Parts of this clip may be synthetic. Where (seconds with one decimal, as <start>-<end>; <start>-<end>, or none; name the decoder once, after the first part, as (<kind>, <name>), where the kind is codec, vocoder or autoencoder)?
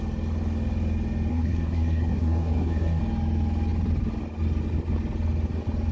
1.3-3.0 (codec, SNAC)